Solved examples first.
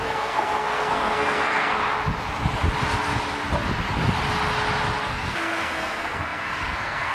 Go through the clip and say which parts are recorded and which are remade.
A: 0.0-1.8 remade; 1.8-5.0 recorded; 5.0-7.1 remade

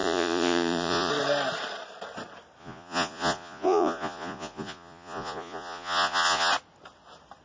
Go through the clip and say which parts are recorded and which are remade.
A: 0.0-1.1 remade; 1.1-2.6 recorded; 2.6-6.5 remade; 6.5-7.4 recorded

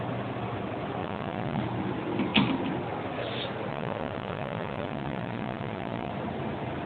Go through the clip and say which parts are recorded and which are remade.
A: 0.0-1.0 recorded; 1.0-1.6 remade; 1.6-3.7 recorded; 3.7-6.1 remade; 6.1-6.9 recorded

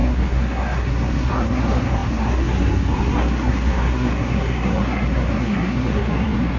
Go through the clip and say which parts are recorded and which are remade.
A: 0.0-6.6 remade

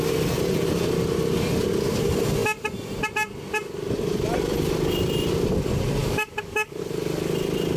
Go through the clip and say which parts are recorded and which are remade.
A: 0.0-6.0 recorded; 6.0-6.8 remade; 6.8-7.8 recorded

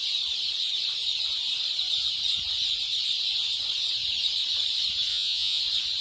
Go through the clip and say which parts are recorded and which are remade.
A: 0.0-5.1 recorded; 5.1-5.6 remade; 5.6-6.0 recorded